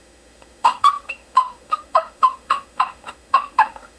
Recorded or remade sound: remade